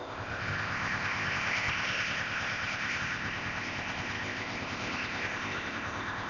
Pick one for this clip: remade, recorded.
remade